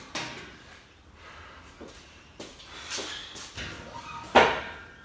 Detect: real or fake real